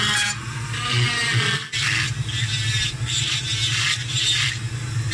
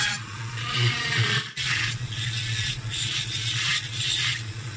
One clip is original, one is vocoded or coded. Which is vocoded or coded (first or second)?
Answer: second